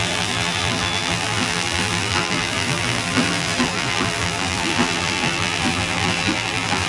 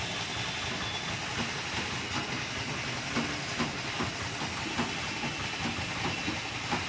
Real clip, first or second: second